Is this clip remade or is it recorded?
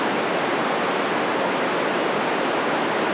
recorded